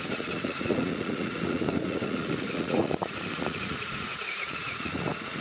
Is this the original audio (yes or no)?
no